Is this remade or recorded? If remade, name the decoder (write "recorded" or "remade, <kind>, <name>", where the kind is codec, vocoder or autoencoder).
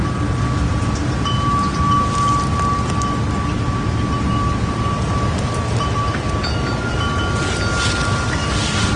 recorded